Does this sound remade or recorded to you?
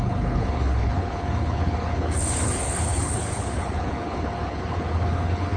remade